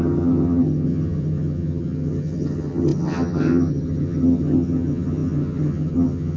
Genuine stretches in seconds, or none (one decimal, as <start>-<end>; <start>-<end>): none